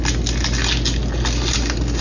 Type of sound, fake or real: real